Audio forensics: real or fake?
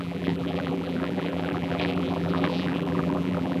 fake